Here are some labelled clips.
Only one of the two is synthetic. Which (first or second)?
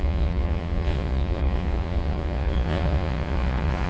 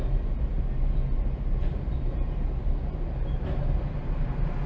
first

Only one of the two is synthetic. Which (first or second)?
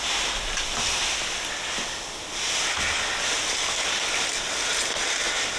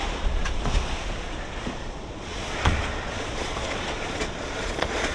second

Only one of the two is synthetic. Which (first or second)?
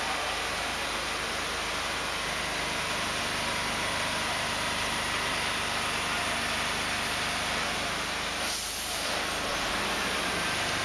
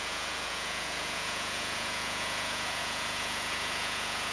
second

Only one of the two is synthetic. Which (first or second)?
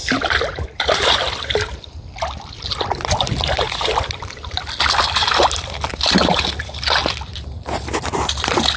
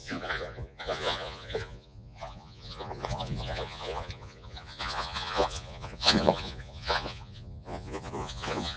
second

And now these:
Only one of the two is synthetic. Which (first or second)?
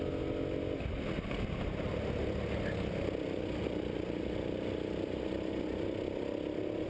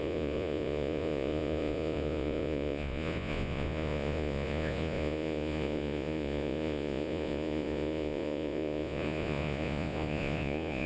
second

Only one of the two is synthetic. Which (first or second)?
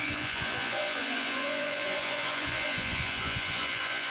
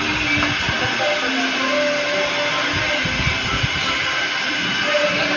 first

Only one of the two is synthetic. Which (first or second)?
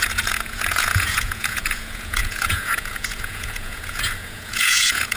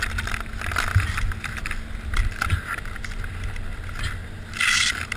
first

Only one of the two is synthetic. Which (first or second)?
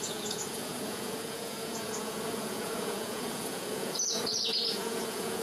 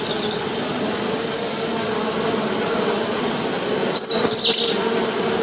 first